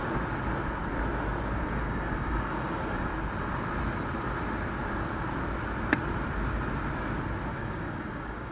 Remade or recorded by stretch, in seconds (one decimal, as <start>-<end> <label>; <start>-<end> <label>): 0.0-1.6 recorded; 1.6-3.1 remade; 3.1-7.5 recorded; 7.5-8.5 remade